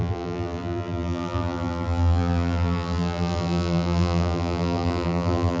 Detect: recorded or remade remade